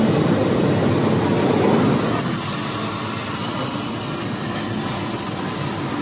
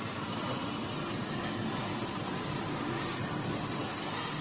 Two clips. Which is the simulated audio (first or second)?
second